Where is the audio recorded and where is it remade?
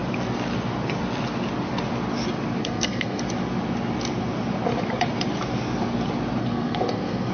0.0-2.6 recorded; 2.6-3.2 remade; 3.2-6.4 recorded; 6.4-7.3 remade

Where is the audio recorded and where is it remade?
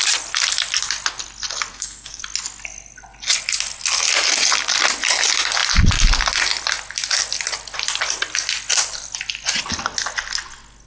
0.0-1.7 recorded; 1.7-2.2 remade; 2.2-10.9 recorded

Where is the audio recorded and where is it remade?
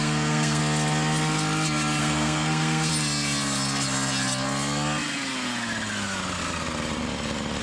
0.0-0.6 remade; 0.6-2.0 recorded; 2.0-2.9 remade; 2.9-7.6 recorded